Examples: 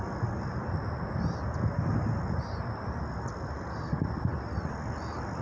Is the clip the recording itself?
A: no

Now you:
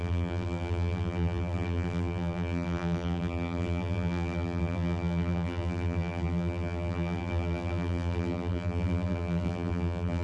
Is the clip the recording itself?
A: no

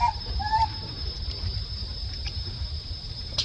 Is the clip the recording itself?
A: no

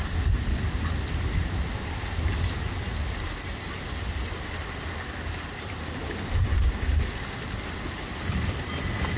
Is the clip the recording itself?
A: yes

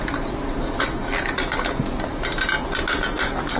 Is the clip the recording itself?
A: yes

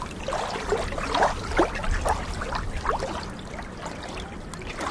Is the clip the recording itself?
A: yes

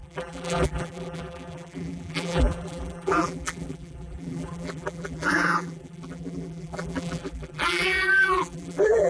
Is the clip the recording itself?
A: no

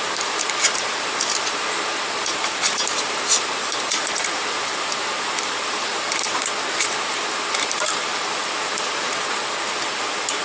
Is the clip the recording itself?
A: no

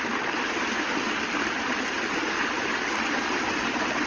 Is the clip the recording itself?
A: no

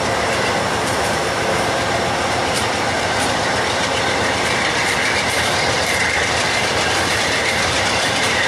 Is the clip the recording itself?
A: no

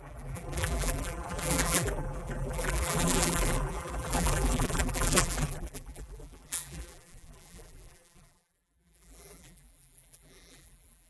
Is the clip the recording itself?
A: no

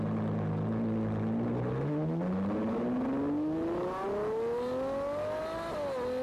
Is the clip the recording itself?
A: yes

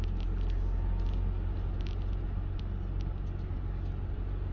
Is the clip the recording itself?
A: yes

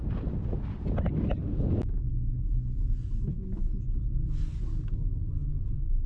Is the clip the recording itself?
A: yes